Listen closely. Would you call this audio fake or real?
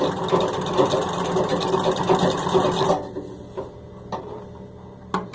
real